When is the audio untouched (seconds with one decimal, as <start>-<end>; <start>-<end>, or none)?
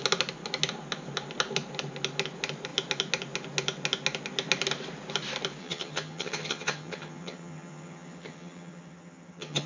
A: 0.0-5.6